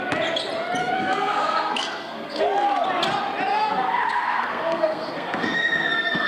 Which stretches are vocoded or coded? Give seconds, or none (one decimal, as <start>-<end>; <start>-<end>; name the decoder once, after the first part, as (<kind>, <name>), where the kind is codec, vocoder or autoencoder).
0.8-2.4 (codec, SNAC); 3.5-6.3